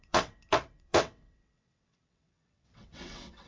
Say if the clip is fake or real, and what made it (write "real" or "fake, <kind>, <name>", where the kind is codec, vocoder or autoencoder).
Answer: fake, vocoder, WaveNeXt